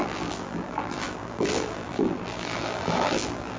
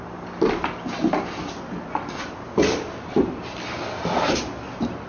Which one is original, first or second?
second